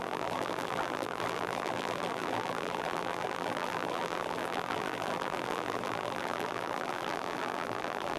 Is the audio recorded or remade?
remade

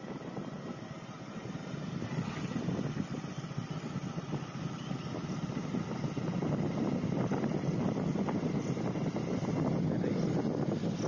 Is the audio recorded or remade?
recorded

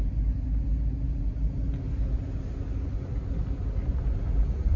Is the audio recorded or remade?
recorded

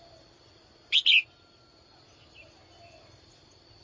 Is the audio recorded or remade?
recorded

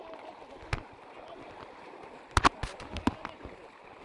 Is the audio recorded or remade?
recorded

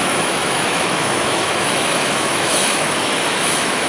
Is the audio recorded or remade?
remade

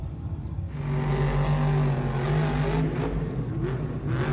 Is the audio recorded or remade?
recorded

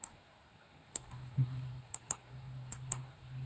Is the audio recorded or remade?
remade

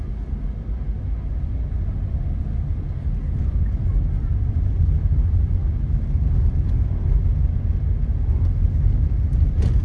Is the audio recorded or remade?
recorded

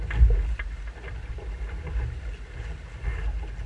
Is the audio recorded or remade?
recorded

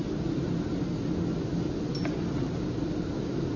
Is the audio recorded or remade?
recorded